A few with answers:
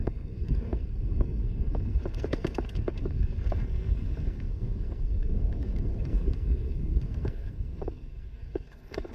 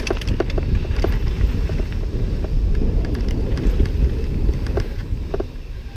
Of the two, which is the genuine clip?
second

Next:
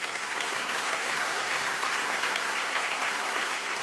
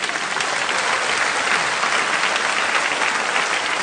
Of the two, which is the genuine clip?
second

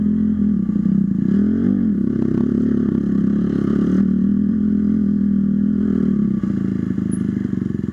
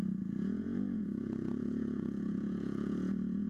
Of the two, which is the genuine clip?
first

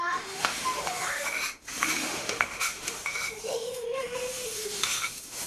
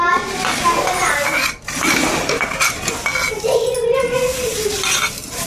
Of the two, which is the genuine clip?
second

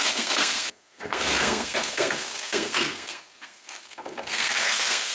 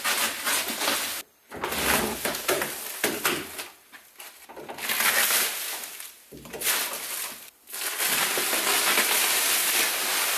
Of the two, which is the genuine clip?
second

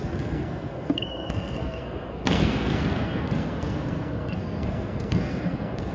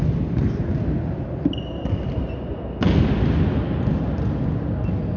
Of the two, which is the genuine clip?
second